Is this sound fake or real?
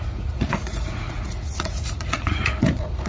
fake